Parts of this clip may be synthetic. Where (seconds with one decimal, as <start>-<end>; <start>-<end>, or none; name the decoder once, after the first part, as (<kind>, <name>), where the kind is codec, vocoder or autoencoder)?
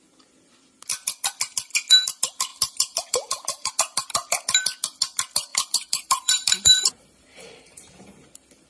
2.5-3.7 (vocoder, BigVGAN v2); 5.5-8.1